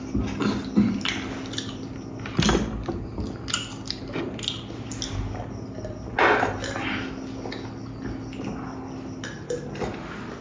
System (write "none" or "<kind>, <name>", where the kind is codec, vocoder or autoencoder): none